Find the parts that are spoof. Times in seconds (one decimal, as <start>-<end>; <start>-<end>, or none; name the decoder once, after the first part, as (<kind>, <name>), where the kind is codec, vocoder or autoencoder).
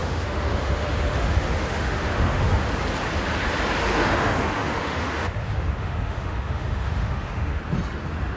0.0-2.7 (autoencoder, DAC-VAE); 3.8-7.6